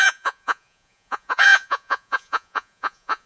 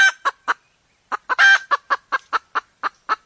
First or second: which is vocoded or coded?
first